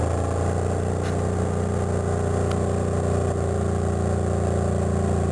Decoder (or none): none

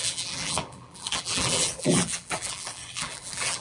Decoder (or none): vocoder, BigVGAN v2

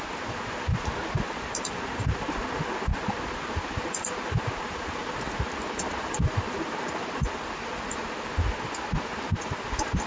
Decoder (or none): none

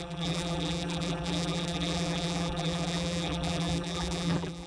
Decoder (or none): vocoder, BigVGAN v2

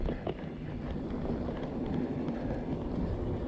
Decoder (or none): none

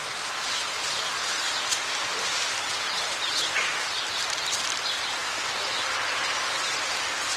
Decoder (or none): vocoder, BigVGAN v2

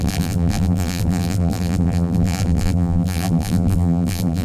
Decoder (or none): vocoder, BigVGAN v2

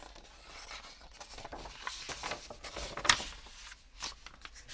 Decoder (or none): none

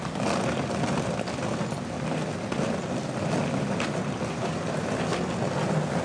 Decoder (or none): none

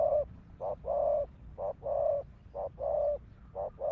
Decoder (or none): vocoder, BigVGAN v2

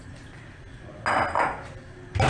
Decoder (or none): none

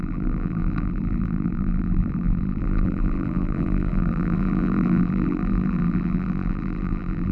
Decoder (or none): vocoder, BigVGAN v2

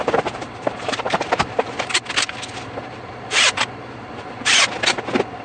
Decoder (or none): none